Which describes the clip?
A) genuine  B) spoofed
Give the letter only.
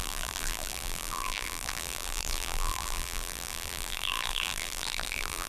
B